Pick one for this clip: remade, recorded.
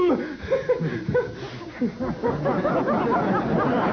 recorded